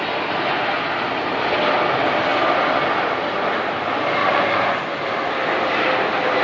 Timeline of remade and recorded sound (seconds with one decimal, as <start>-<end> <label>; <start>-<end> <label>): 0.0-4.2 recorded; 4.2-4.8 remade; 4.8-6.4 recorded